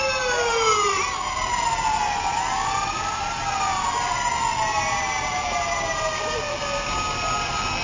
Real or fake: real